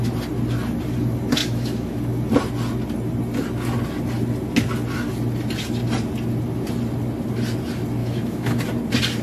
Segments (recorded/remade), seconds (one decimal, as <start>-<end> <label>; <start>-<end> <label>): 0.0-1.4 recorded; 1.4-2.0 remade; 2.0-8.0 recorded; 8.0-8.6 remade; 8.6-9.2 recorded